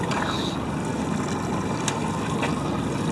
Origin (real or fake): real